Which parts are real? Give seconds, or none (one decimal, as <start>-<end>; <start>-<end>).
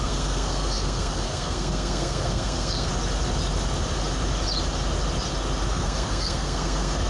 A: 2.9-5.7